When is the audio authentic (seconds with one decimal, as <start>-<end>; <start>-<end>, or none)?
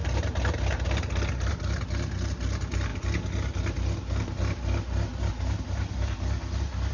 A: 0.0-6.9